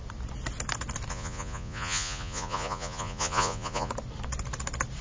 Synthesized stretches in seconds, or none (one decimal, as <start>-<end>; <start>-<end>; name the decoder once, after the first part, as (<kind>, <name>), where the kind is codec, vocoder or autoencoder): 1.1-3.9 (vocoder, Vocos)